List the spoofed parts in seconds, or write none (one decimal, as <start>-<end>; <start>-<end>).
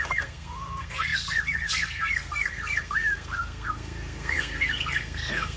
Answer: 0.0-5.6